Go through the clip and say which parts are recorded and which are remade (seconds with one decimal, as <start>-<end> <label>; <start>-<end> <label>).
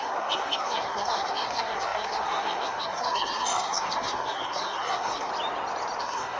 0.0-5.3 remade; 5.3-6.0 recorded; 6.0-6.4 remade